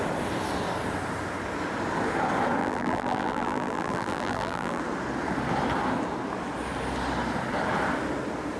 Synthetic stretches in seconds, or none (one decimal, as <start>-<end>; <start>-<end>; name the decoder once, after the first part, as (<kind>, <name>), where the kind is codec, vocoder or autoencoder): 2.6-4.8 (vocoder, BigVGAN v2)